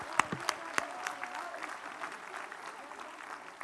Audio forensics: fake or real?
real